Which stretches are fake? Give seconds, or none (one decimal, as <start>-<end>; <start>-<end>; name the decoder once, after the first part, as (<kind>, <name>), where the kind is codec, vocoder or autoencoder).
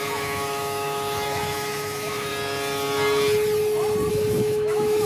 0.0-2.3 (autoencoder, DAC-VAE); 4.1-5.1